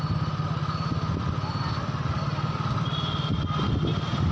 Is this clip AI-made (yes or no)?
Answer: no